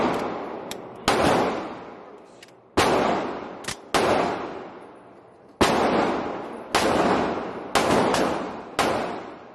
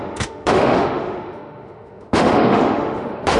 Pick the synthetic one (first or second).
second